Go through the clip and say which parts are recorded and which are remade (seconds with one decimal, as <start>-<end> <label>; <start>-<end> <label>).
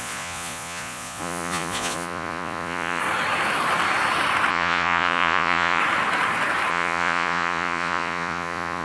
0.0-3.0 remade; 3.0-4.5 recorded; 4.5-5.8 remade; 5.8-6.7 recorded; 6.7-8.8 remade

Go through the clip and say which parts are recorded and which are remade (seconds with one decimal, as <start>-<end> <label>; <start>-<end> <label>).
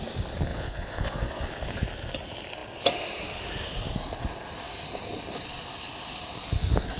0.0-0.5 recorded; 0.5-1.4 remade; 1.4-7.0 recorded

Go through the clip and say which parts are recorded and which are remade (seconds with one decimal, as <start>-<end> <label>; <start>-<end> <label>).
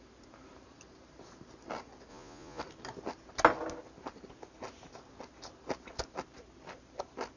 0.0-2.1 recorded; 2.1-2.6 remade; 2.6-7.4 recorded